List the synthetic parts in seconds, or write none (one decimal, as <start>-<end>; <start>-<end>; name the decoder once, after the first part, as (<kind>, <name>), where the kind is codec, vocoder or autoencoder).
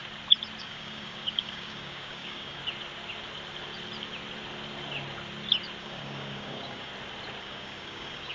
0.6-2.6 (codec, DAC); 5.8-6.9; 7.4-8.3